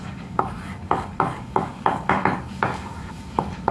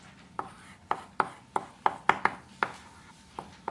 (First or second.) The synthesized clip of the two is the first